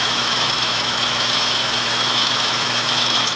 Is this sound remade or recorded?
remade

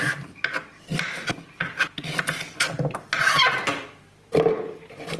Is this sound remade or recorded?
remade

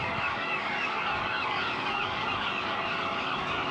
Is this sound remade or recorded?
remade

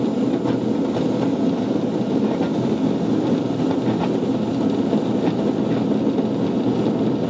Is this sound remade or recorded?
recorded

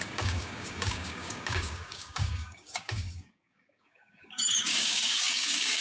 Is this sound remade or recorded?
remade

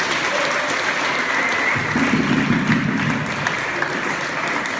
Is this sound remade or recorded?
recorded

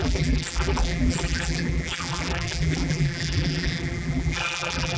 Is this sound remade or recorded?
remade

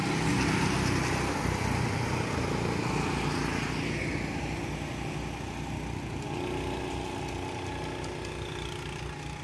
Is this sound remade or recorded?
recorded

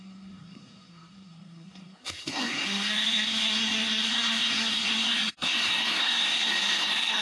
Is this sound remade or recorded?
remade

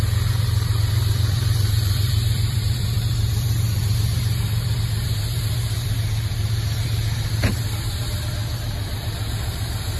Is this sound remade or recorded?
remade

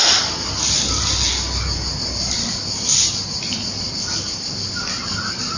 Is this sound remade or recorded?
recorded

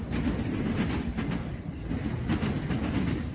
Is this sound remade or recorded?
recorded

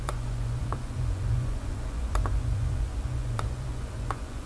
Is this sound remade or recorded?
remade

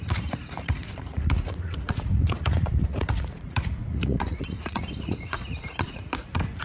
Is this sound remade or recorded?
remade